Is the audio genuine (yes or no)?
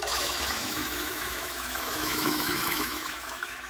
no